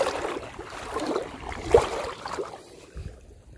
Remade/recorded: recorded